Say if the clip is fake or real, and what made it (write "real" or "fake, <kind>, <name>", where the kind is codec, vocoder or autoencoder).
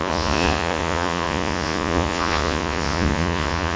fake, vocoder, Vocos